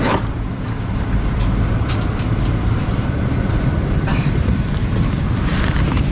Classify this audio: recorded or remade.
remade